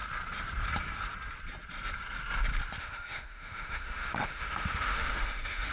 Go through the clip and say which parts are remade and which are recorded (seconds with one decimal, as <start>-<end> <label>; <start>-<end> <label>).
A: 0.0-2.8 recorded; 2.8-5.7 remade